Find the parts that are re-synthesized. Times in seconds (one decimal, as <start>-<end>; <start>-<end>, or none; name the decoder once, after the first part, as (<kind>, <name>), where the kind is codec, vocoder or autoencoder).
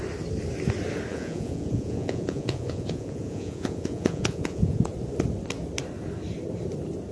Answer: 1.1-4.8 (vocoder, Vocos)